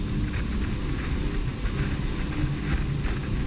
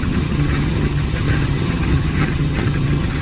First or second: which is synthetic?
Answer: second